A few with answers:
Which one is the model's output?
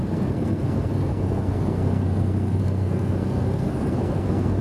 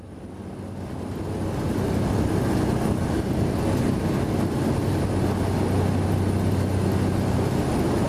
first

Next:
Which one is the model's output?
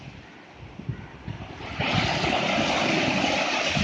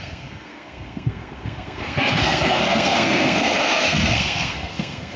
second